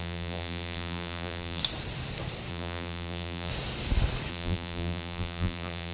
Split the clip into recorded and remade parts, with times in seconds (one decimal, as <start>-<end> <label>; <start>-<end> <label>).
0.0-1.6 remade; 1.6-2.5 recorded; 2.5-3.5 remade; 3.5-4.3 recorded; 4.3-5.9 remade